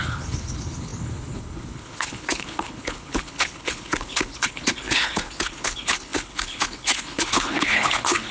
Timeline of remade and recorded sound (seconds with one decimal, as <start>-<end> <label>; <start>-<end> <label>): 0.0-8.3 remade